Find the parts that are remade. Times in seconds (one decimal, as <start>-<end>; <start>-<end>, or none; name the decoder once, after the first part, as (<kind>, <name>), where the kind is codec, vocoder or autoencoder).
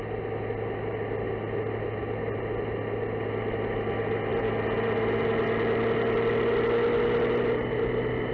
none